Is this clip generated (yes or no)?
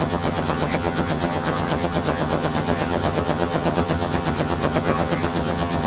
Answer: yes